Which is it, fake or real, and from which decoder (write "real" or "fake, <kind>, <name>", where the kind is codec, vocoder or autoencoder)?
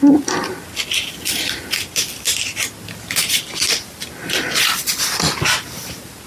real